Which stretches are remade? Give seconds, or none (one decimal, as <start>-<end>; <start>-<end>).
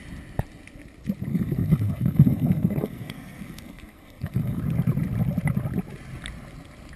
1.3-4.6